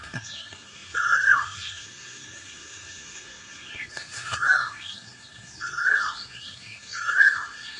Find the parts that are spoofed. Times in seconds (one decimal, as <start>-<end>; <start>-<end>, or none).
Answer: 0.0-7.8

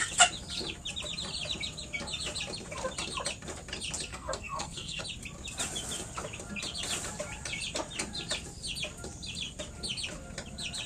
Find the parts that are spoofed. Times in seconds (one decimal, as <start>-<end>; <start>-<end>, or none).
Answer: 4.1-5.0

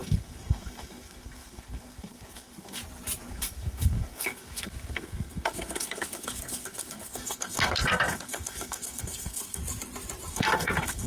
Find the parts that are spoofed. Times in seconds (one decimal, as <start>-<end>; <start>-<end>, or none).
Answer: 0.0-2.8; 3.3-9.6; 10.3-11.1

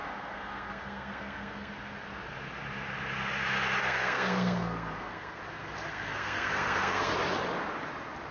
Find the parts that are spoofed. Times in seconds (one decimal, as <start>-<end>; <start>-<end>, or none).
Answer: 0.0-1.7; 3.8-5.4; 5.9-7.1